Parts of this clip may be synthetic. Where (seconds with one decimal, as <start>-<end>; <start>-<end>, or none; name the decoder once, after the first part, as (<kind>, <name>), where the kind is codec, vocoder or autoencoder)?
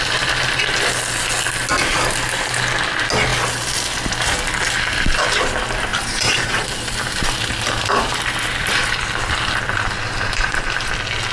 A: 5.9-10.9 (vocoder, BigVGAN v2)